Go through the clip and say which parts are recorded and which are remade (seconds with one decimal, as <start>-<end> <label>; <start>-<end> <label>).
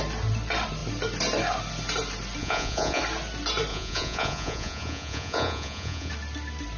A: 0.0-2.4 recorded; 2.4-3.0 remade; 3.0-3.7 recorded; 3.7-6.1 remade; 6.1-6.8 recorded